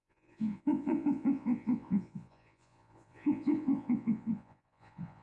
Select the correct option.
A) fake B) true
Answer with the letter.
A